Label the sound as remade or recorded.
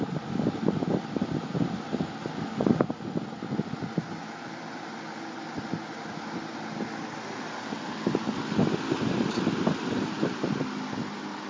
recorded